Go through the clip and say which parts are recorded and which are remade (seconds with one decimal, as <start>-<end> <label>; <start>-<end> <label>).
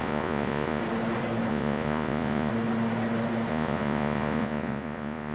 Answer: 0.0-0.8 remade; 0.8-1.5 recorded; 1.5-2.5 remade; 2.5-3.5 recorded; 3.5-5.3 remade